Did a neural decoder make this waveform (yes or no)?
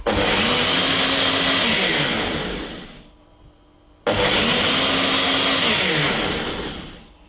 no